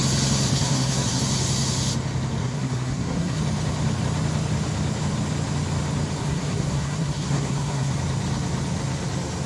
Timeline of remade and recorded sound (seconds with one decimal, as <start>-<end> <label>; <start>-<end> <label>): 0.0-0.5 recorded; 0.5-1.2 remade; 1.2-2.4 recorded; 2.4-3.4 remade; 3.4-6.2 recorded; 6.2-7.9 remade; 7.9-9.5 recorded